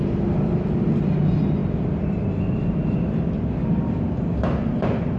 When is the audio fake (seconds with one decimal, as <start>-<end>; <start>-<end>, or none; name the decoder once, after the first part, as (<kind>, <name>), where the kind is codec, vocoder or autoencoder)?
0.0-1.6 (vocoder, BigVGAN v2); 3.7-5.2

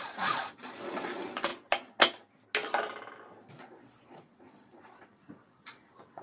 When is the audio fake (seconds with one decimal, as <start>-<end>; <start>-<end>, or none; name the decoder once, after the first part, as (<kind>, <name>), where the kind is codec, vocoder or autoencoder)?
0.0-1.5 (vocoder, Vocos); 3.5-6.2

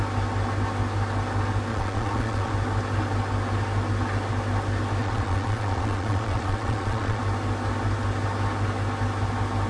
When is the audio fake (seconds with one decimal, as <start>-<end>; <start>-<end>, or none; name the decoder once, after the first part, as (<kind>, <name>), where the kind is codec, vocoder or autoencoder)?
1.7-2.5 (vocoder, Vocos); 5.0-7.2

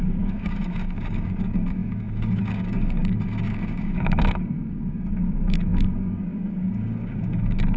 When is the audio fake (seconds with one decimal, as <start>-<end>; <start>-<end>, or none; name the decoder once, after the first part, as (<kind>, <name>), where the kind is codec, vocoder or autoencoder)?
0.0-7.8 (codec, DAC)

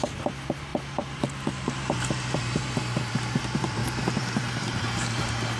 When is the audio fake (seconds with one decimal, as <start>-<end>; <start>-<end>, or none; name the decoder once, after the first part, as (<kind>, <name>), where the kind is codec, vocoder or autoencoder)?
0.0-5.6 (vocoder, BigVGAN v2)

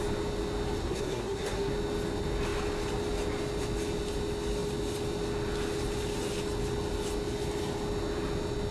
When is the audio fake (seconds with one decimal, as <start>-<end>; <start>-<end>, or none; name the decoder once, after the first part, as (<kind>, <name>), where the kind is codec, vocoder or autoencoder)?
0.8-1.7 (codec, SNAC)